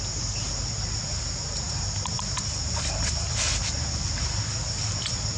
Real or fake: real